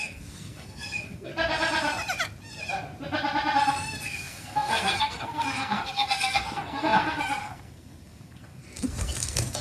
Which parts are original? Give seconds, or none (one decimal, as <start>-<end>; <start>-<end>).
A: 1.3-3.7